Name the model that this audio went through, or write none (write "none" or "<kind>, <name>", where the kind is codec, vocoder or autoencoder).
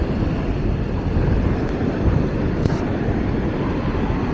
none